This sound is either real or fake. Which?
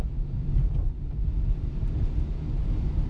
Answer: fake